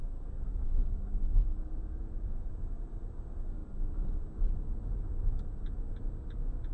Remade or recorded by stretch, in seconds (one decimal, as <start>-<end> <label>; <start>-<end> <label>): 0.0-1.4 recorded; 1.4-2.5 remade; 2.5-6.7 recorded